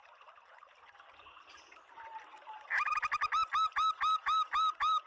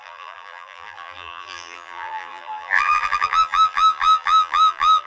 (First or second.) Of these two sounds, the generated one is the second